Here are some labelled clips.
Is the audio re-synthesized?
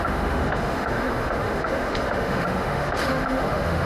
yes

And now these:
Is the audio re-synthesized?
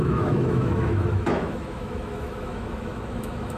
yes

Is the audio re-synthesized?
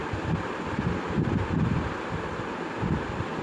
no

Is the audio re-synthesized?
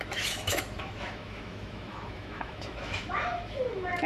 yes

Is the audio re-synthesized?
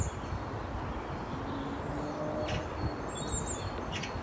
no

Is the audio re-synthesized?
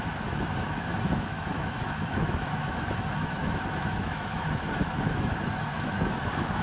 yes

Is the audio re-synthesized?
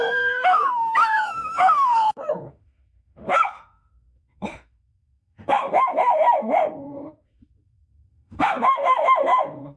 yes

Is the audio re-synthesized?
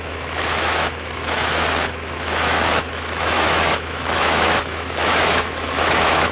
yes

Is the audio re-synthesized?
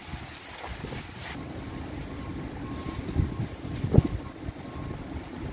no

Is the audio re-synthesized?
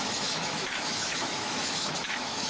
yes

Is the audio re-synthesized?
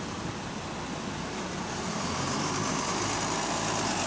no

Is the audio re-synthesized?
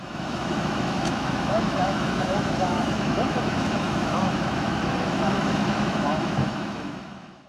yes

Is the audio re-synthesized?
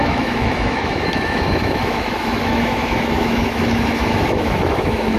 yes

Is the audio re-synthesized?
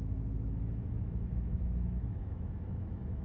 yes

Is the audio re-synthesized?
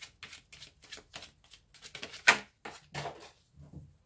no